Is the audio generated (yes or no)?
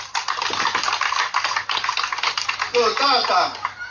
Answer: no